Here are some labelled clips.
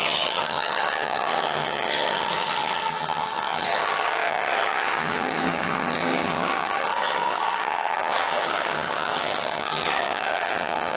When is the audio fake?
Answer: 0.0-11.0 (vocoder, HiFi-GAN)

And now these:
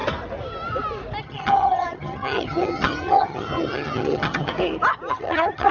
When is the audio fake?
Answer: 1.2-4.5 (vocoder, HiFi-GAN); 5.1-5.7

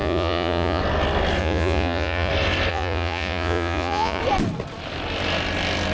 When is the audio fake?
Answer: 0.0-0.8 (vocoder, Vocos); 1.4-2.3; 2.7-4.2